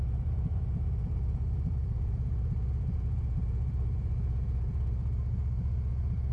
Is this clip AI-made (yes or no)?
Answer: yes